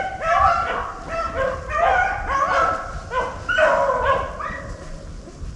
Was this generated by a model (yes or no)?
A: no